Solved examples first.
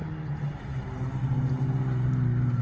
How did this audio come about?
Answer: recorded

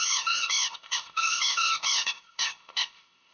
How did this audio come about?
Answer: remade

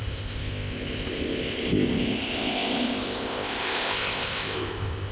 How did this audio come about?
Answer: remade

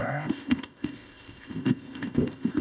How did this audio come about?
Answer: remade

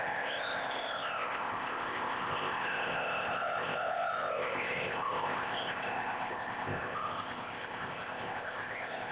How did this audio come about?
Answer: remade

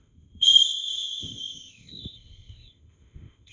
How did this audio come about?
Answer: remade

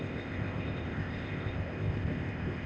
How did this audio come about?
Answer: remade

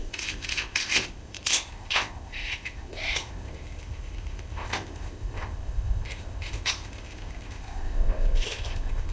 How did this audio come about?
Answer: remade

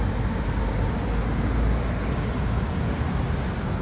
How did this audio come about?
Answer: recorded